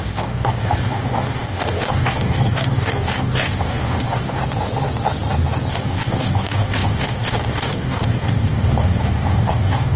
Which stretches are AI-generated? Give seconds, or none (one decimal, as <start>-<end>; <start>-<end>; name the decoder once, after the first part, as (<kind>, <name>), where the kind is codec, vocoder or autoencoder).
0.0-4.4 (codec, DAC); 5.7-10.0